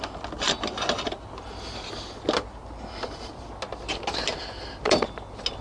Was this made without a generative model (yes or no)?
yes